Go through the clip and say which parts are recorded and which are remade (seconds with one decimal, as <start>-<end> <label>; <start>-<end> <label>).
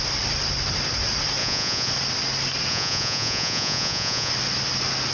0.0-1.4 recorded; 1.4-1.9 remade; 1.9-2.7 recorded; 2.7-4.3 remade; 4.3-5.1 recorded